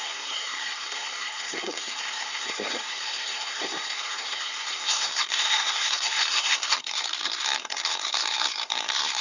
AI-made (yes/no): yes